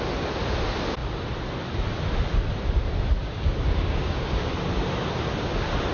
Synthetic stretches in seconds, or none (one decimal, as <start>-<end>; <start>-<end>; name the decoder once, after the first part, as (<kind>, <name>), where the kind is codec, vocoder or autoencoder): 3.2-4.5 (codec, DAC)